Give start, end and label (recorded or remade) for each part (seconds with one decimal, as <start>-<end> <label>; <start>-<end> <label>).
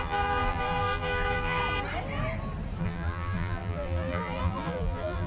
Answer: 0.0-1.6 remade; 1.6-2.8 recorded; 2.8-5.3 remade